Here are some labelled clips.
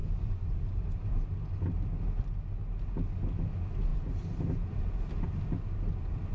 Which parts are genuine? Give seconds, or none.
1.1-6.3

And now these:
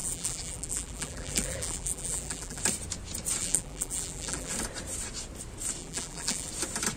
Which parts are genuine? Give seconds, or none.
2.6-3.4; 4.5-5.8; 6.5-7.0

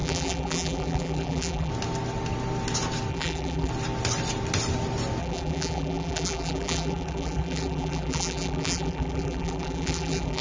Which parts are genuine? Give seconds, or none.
1.7-3.1; 3.7-5.2

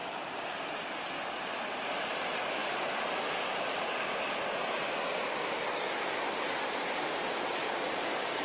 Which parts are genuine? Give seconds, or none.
0.0-8.4